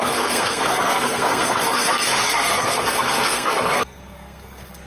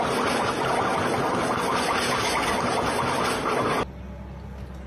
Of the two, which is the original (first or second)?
second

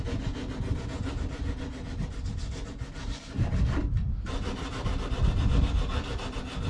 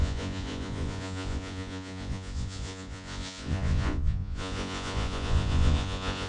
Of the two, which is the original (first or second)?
first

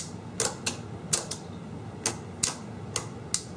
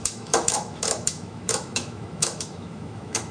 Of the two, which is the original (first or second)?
first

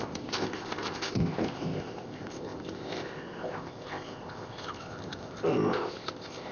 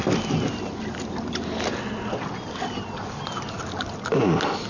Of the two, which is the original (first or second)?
second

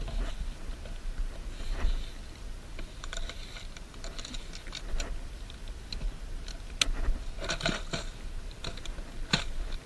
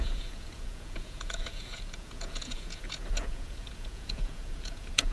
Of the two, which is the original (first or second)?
first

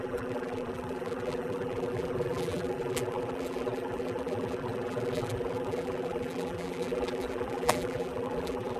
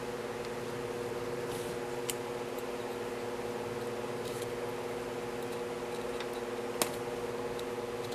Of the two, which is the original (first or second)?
second